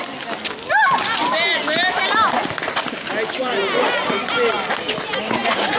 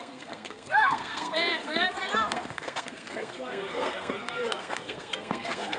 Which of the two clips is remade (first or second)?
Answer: second